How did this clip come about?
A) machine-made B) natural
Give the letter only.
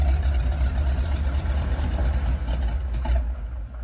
B